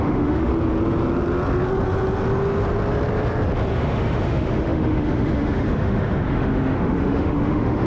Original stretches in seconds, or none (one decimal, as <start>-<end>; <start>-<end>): 0.5-3.7